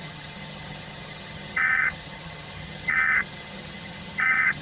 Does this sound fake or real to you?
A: fake